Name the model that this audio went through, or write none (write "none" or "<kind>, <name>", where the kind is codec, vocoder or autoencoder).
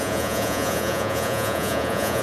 vocoder, Vocos